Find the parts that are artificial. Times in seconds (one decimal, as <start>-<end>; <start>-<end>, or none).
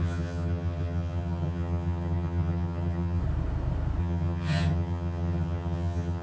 0.0-3.2; 4.0-6.2